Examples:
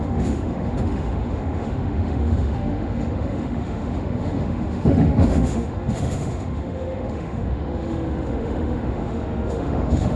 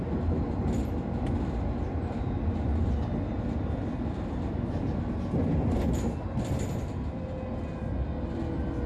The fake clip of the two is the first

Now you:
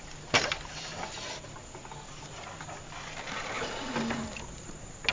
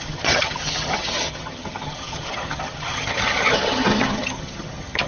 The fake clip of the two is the second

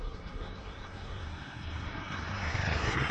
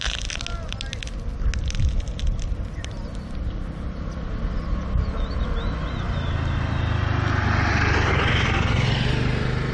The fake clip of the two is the first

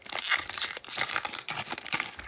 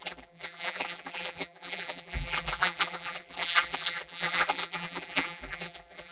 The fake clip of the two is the second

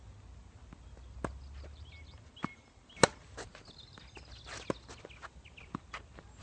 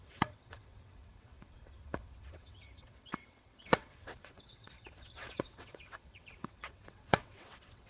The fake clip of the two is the second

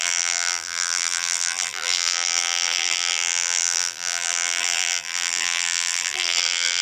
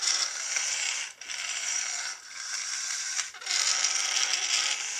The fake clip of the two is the first